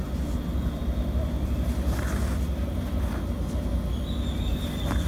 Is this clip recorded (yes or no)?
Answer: yes